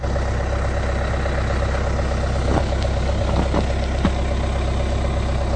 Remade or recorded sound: recorded